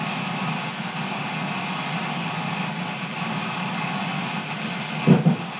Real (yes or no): yes